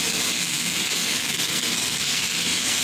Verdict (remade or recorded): remade